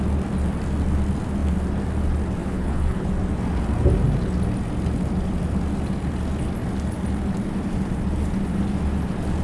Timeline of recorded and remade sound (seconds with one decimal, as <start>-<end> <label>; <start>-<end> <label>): 0.0-2.4 recorded; 2.4-3.1 remade; 3.1-9.4 recorded